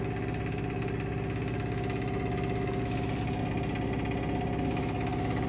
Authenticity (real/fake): real